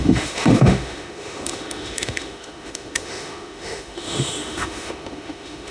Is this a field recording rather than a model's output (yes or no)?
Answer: no